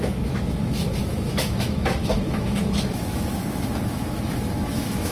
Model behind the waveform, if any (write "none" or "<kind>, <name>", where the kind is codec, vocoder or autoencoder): autoencoder, DAC-VAE